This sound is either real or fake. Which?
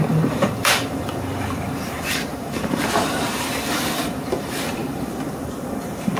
fake